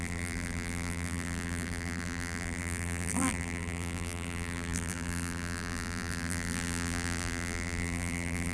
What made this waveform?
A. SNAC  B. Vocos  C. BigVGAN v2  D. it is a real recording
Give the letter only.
C